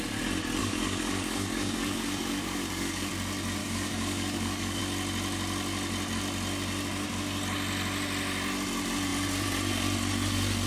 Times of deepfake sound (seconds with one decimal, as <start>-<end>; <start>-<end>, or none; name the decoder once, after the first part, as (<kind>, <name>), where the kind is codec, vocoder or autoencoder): 0.6-3.1 (codec, DAC); 3.6-4.8